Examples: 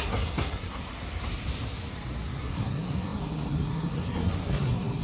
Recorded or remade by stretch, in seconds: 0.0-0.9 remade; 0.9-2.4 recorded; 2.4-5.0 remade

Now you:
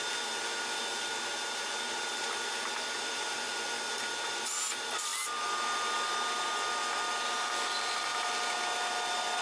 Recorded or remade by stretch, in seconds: 0.0-9.4 recorded

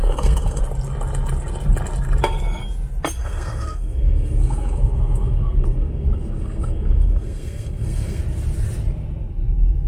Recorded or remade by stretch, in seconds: 0.0-0.6 remade; 0.6-3.2 recorded; 3.2-8.2 remade; 8.2-9.9 recorded

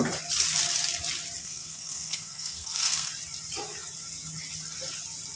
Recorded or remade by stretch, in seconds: 0.0-1.4 recorded; 1.4-3.1 remade; 3.1-5.4 recorded

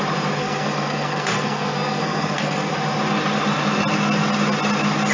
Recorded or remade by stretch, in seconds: 0.0-0.4 recorded; 0.4-2.7 remade; 2.7-5.1 recorded